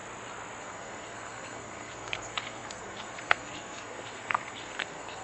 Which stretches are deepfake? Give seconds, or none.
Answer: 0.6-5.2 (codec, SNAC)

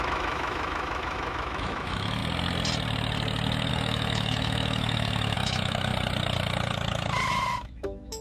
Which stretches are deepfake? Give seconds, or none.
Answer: 0.0-2.2 (autoencoder, DAC-VAE); 3.7-5.9; 7.3-8.2

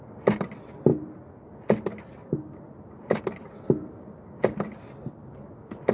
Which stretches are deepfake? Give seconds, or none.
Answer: none

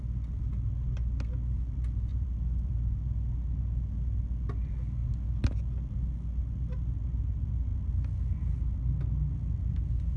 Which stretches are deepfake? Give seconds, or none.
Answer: 2.1-2.8 (vocoder, BigVGAN v2)

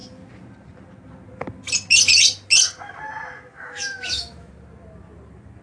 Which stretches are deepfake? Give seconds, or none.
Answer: 3.5-4.5 (autoencoder, DAC-VAE)

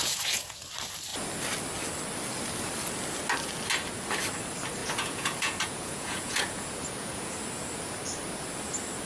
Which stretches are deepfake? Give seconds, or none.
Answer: 0.0-0.6 (vocoder, Vocos); 4.8-7.3

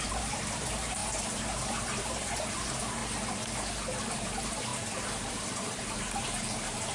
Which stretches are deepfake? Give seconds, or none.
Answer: 0.0-1.0 (vocoder, BigVGAN v2); 1.7-3.0; 4.0-4.7; 5.3-6.9

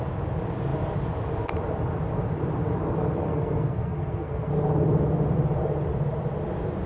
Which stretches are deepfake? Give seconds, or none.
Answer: 3.3-4.5 (codec, SNAC)